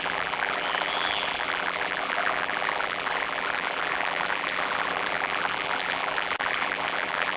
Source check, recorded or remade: remade